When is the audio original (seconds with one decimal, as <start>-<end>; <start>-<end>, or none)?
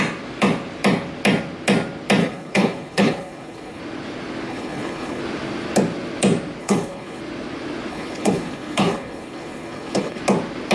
0.0-2.2; 3.8-4.5; 5.2-6.6; 7.2-7.9; 10.2-10.7